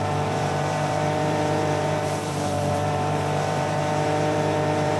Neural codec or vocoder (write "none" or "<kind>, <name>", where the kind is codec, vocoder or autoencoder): vocoder, BigVGAN v2